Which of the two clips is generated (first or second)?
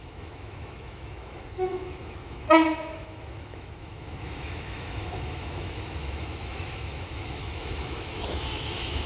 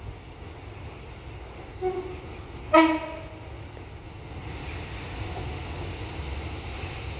first